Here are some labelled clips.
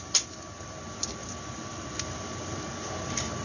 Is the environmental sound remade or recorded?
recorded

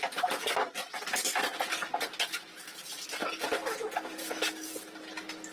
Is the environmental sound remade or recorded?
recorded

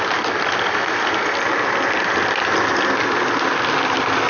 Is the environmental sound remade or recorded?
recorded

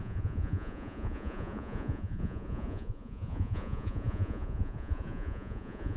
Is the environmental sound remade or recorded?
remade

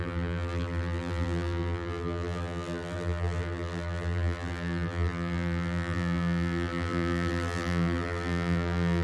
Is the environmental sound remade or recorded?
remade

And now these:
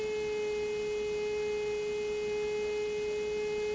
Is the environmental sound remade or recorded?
recorded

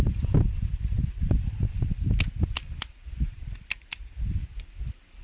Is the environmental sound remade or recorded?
recorded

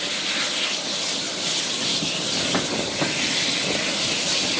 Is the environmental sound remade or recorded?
recorded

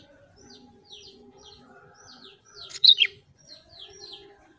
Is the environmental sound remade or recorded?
remade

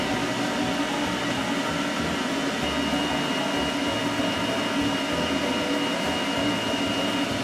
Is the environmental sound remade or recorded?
recorded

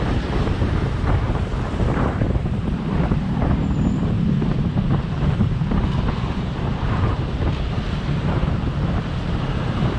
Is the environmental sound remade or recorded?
remade